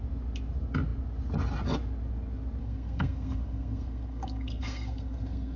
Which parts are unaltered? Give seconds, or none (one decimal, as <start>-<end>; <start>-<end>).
0.0-2.6